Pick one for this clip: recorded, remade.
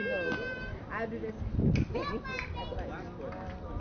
recorded